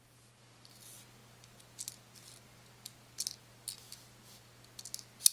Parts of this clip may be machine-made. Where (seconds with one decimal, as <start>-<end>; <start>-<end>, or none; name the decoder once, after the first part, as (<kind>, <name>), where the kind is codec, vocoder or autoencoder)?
none